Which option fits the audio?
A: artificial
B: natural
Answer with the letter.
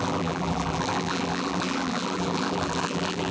A